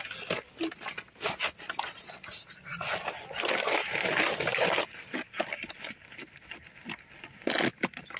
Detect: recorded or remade recorded